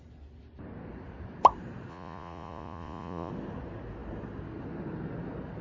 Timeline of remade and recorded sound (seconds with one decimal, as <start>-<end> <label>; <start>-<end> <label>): 0.0-1.9 recorded; 1.9-3.3 remade; 3.3-5.6 recorded